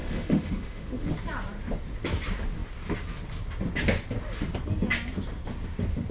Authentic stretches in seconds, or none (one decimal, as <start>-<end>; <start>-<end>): 1.1-6.1